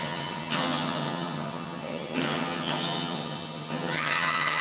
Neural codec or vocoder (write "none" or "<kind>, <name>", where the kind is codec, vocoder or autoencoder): vocoder, HiFi-GAN